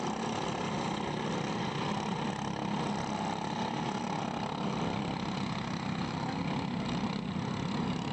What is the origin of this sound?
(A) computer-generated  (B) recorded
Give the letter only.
B